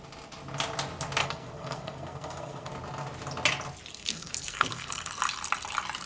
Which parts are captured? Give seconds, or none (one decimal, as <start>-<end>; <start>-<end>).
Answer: 0.0-1.2; 2.7-3.9; 5.2-6.1